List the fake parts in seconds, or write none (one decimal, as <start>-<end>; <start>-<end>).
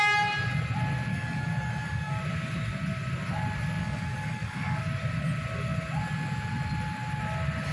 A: 1.1-2.2; 3.8-4.8